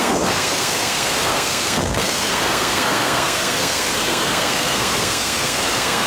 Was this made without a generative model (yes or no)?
no